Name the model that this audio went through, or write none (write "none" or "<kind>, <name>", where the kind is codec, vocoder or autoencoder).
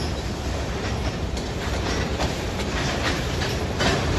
vocoder, BigVGAN v2